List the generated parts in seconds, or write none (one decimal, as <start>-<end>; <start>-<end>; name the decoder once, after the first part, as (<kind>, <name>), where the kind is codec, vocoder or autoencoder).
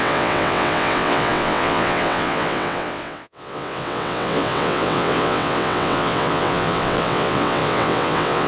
0.0-8.5 (vocoder, WaveNeXt)